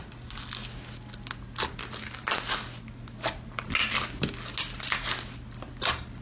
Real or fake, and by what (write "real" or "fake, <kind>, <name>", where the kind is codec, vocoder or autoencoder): real